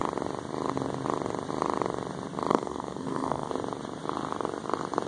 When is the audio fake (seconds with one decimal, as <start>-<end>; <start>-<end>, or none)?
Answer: 2.5-3.5